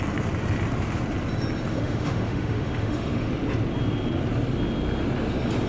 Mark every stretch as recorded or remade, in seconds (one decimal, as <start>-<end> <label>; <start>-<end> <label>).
0.0-1.7 recorded; 1.7-3.3 remade; 3.3-5.7 recorded